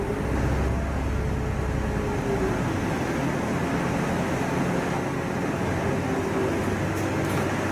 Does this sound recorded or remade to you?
recorded